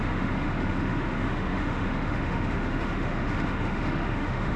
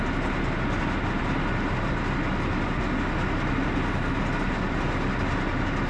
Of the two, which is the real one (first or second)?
second